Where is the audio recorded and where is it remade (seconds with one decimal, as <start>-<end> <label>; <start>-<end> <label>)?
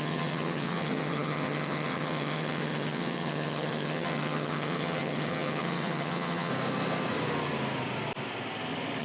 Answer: 0.0-6.5 remade; 6.5-9.0 recorded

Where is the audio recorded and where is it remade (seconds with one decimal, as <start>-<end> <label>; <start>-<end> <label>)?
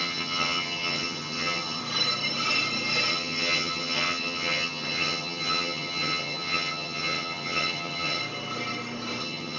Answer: 0.0-1.8 remade; 1.8-3.1 recorded; 3.1-8.2 remade; 8.2-9.2 recorded; 9.2-9.6 remade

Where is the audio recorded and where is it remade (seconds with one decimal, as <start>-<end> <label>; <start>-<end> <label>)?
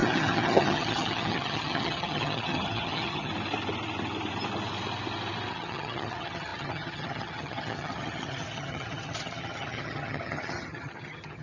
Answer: 0.0-3.3 remade; 3.3-5.5 recorded; 5.5-11.4 remade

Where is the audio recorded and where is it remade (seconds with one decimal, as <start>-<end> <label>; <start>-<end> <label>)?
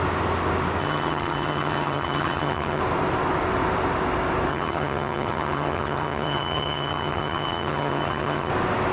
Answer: 0.0-0.8 recorded; 0.8-2.8 remade; 2.8-4.5 recorded; 4.5-8.5 remade; 8.5-8.9 recorded